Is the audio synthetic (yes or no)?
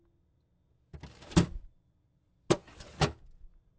no